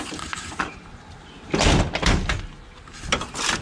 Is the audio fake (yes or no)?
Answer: no